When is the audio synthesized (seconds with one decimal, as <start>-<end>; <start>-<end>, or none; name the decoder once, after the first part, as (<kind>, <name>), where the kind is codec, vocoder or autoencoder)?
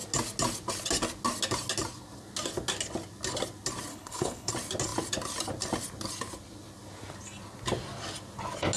3.9-4.5 (codec, HILCodec)